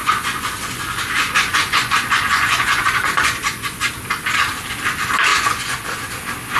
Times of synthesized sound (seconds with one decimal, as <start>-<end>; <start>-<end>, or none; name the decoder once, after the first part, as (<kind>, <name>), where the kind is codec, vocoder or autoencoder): 0.0-3.9 (vocoder, Vocos); 5.3-6.1